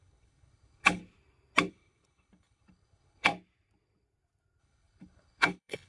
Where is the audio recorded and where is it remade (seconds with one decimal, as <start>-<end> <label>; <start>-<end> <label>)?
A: 0.0-1.0 remade; 1.0-1.7 recorded; 1.7-3.3 remade; 3.3-4.6 recorded; 4.6-5.9 remade

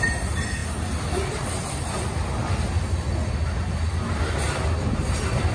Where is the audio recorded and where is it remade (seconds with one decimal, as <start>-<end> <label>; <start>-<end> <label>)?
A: 0.0-5.5 recorded

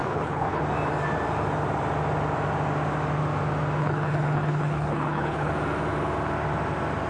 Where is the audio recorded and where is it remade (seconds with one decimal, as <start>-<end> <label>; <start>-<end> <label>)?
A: 0.0-0.6 remade; 0.6-3.8 recorded; 3.8-5.5 remade; 5.5-7.1 recorded

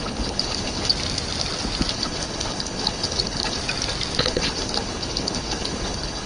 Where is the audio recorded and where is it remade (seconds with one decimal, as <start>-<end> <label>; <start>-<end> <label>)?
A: 0.0-0.9 remade; 0.9-1.9 recorded; 1.9-3.6 remade; 3.6-4.2 recorded; 4.2-6.3 remade

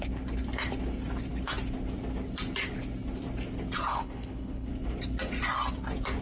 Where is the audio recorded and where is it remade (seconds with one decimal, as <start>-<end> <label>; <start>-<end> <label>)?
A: 0.0-3.9 recorded; 3.9-4.7 remade; 4.7-6.2 recorded

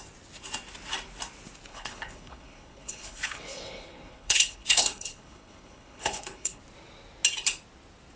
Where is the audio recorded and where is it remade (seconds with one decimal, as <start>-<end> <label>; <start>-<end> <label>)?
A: 0.0-1.7 recorded; 1.7-6.6 remade; 6.6-8.2 recorded